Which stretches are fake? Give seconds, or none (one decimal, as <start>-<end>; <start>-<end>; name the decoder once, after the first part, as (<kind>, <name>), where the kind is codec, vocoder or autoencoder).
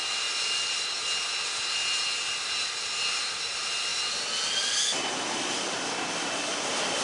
none